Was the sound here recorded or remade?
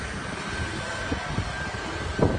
recorded